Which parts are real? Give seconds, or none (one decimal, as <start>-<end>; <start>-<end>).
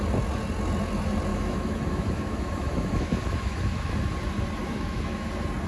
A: 0.0-1.3; 3.9-4.6; 5.3-5.7